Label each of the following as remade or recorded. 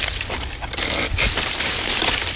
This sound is recorded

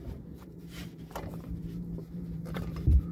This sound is remade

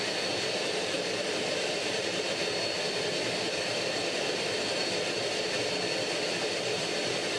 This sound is remade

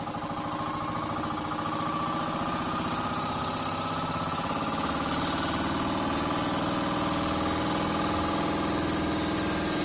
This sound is recorded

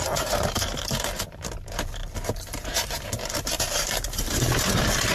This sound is remade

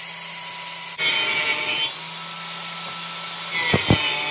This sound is recorded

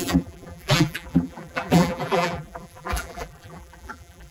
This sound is remade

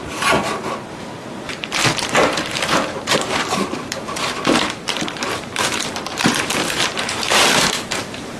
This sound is remade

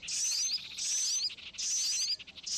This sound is recorded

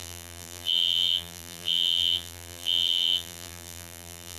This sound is remade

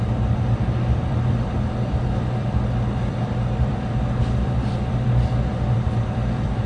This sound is remade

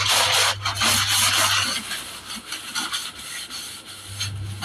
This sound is recorded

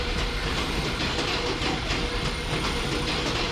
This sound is recorded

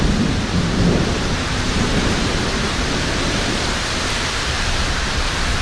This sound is remade